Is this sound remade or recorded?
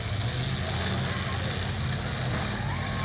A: recorded